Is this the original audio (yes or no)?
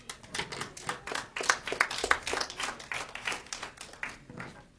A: yes